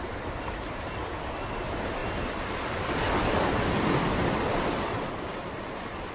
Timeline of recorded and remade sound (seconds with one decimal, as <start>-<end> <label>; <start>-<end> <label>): 0.0-2.0 recorded; 2.0-6.1 remade